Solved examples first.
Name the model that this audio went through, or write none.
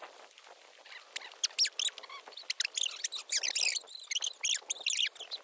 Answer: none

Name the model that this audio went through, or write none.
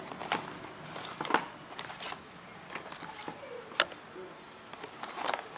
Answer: none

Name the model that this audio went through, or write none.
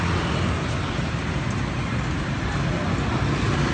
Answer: none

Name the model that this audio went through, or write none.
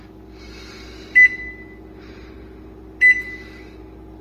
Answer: none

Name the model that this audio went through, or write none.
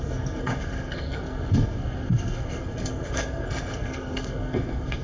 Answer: codec, SNAC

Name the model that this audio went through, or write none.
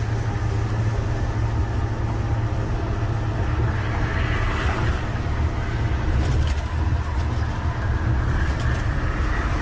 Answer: none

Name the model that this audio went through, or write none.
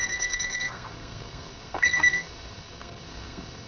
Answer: codec, SNAC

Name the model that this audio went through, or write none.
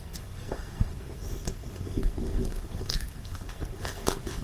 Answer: codec, SNAC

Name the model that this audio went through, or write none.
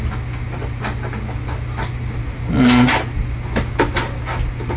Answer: none